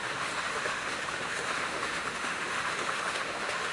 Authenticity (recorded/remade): remade